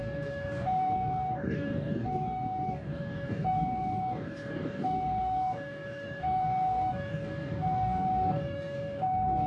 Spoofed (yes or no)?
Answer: yes